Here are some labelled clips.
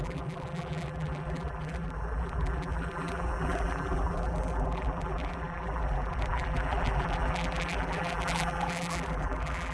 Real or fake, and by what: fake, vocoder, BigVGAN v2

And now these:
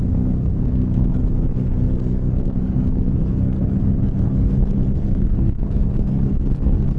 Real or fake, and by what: fake, codec, SNAC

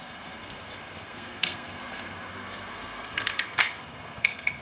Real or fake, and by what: fake, codec, SNAC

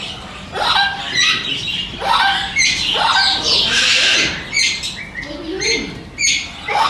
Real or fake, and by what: real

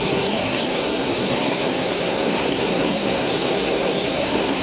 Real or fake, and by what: fake, codec, SNAC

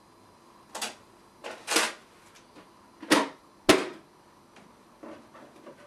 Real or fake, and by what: real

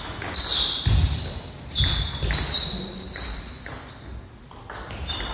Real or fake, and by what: real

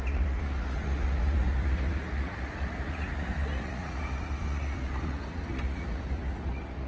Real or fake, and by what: fake, vocoder, Vocos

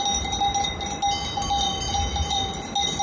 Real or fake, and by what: real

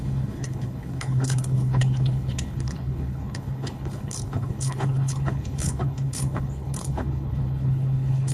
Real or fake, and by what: fake, codec, HILCodec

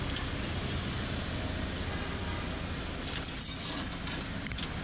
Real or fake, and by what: real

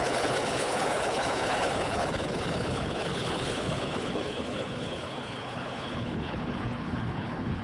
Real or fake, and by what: fake, codec, HILCodec